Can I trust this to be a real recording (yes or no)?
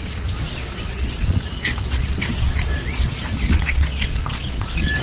no